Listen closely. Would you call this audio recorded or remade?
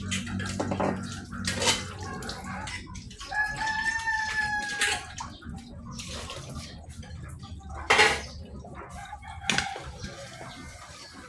recorded